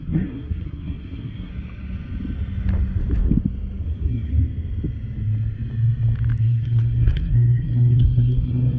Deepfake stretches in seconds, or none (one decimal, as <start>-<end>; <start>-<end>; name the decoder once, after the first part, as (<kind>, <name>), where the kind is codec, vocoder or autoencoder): 0.0-1.5 (codec, SNAC); 3.8-4.3; 6.4-8.8